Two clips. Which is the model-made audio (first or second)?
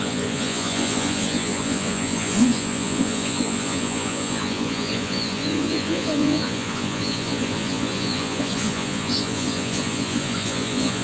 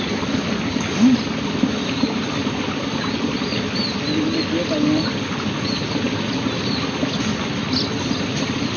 first